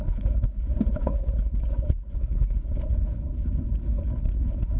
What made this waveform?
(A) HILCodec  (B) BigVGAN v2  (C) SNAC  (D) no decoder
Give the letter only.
A